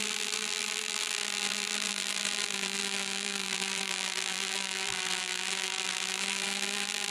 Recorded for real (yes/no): no